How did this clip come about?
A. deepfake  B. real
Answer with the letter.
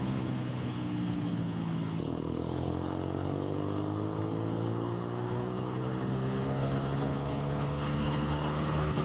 A